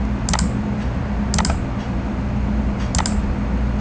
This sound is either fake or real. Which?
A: real